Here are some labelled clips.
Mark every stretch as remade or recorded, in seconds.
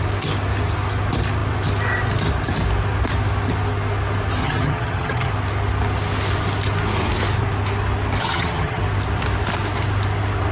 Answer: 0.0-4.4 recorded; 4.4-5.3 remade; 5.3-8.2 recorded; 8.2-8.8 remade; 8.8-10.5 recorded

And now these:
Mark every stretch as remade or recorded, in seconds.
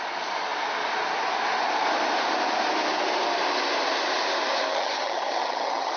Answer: 0.0-4.7 recorded; 4.7-6.0 remade